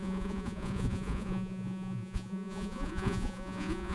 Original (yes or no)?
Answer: no